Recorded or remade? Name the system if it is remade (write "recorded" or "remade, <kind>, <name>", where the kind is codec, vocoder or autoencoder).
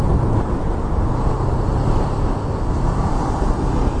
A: recorded